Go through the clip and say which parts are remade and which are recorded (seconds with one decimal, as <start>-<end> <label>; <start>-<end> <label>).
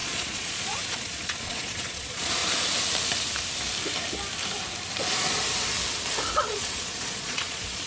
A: 0.0-2.4 remade; 2.4-6.3 recorded; 6.3-7.9 remade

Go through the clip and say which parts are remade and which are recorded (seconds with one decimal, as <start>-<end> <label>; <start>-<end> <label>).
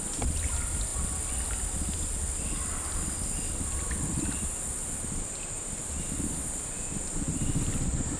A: 0.0-8.2 recorded